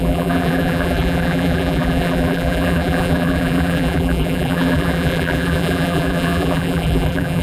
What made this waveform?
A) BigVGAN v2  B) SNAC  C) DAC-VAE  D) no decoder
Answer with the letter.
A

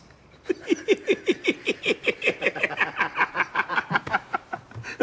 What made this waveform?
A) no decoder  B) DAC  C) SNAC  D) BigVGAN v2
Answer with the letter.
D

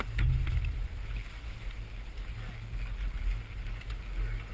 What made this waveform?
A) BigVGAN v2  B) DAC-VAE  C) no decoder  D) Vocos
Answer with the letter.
C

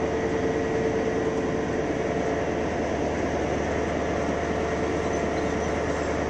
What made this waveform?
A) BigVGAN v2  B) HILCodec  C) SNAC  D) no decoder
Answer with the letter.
D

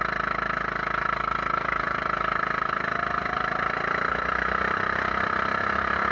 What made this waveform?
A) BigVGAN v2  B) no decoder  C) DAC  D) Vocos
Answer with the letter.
B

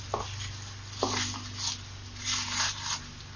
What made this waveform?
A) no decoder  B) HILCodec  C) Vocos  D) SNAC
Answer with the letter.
A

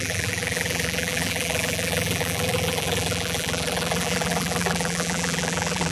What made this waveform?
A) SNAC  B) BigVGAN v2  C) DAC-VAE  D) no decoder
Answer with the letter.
B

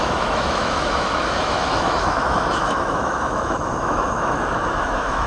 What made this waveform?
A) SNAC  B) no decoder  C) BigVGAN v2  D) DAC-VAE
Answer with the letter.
D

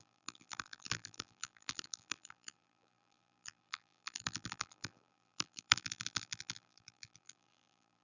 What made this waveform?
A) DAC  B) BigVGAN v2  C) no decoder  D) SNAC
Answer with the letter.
B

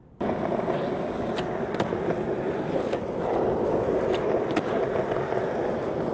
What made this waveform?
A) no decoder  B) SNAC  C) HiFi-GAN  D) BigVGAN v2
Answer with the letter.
A